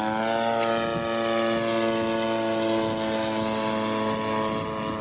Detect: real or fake real